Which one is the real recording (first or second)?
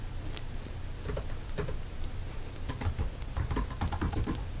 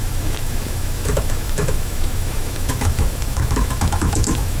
first